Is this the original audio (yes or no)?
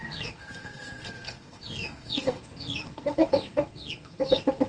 no